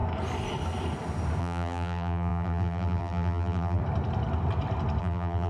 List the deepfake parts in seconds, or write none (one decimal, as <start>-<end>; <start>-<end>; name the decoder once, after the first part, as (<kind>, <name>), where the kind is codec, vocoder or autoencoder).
1.4-3.8 (vocoder, BigVGAN v2); 5.0-5.5

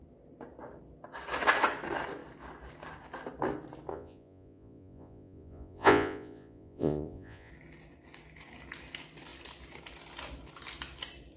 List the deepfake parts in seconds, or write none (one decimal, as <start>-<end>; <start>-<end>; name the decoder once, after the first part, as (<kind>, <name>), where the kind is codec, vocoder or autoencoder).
3.9-7.5 (vocoder, Vocos)